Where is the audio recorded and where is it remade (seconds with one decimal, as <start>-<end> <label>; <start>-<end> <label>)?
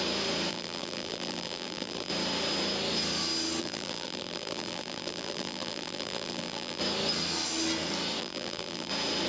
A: 0.0-0.5 recorded; 0.5-2.1 remade; 2.1-3.6 recorded; 3.6-6.8 remade; 6.8-8.2 recorded; 8.2-8.9 remade; 8.9-9.3 recorded